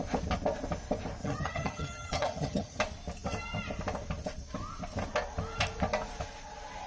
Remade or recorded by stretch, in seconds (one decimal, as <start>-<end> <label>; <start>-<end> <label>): 0.0-1.2 recorded; 1.2-2.8 remade; 2.8-6.9 recorded